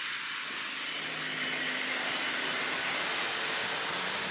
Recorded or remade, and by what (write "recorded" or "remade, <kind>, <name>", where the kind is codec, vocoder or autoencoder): recorded